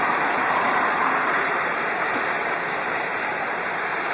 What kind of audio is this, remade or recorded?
remade